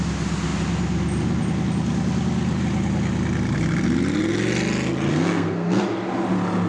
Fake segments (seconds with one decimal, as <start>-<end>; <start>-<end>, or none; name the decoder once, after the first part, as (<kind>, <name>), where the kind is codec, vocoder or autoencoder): 5.1-5.8 (codec, SNAC)